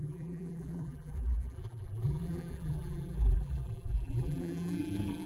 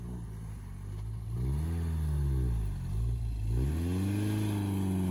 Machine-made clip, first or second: first